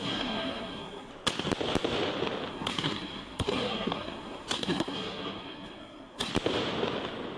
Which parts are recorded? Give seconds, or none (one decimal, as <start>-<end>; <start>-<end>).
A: 1.1-2.5; 6.3-7.4